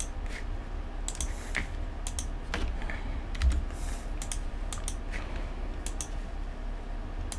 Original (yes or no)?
yes